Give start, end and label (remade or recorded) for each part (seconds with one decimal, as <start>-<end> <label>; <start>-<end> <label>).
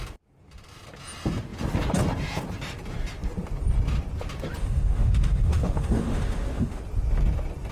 0.0-4.6 recorded; 4.6-6.8 remade; 6.8-7.7 recorded